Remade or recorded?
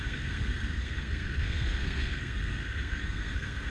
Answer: remade